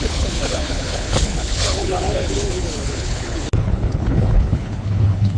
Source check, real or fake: fake